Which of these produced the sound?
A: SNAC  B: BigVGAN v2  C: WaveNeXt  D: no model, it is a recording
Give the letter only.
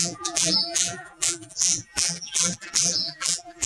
B